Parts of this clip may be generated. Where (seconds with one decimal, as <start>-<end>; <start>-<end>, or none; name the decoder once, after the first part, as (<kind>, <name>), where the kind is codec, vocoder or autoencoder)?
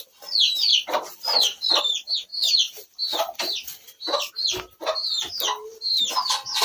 0.7-1.8 (vocoder, BigVGAN v2); 2.3-6.0